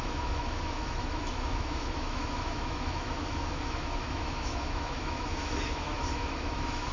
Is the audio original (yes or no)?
no